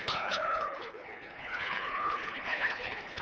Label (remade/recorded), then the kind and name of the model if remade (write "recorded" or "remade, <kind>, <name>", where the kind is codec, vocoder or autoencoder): remade, codec, HILCodec